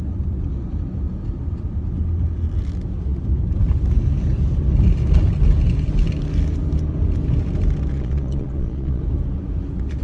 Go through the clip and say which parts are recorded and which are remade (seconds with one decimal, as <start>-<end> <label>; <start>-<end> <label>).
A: 0.0-7.9 recorded; 7.9-9.0 remade; 9.0-10.0 recorded